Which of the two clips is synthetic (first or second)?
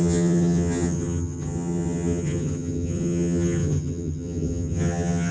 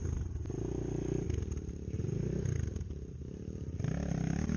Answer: first